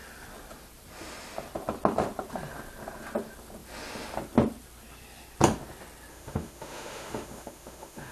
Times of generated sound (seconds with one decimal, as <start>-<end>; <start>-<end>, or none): 6.1-8.1